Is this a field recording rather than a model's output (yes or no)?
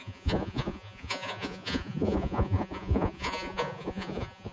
no